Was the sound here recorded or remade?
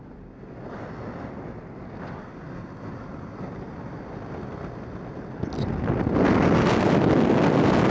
recorded